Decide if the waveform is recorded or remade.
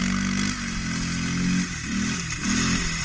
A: recorded